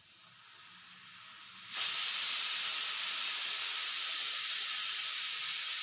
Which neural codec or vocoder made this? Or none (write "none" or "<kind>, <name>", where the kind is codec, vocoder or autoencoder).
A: none